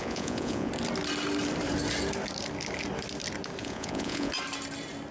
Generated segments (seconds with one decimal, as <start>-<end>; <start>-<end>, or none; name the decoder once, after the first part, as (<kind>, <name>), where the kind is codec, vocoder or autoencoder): 0.0-0.7 (vocoder, Vocos); 3.6-4.3